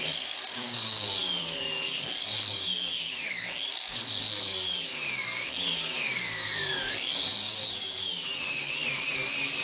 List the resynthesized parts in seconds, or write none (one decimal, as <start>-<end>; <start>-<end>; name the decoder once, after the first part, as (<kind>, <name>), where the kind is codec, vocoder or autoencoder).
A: 0.0-9.6 (codec, DAC)